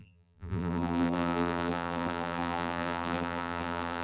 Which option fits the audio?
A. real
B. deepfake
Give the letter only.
B